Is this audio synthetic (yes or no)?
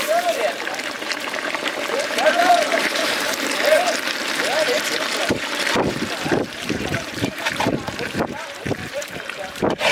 yes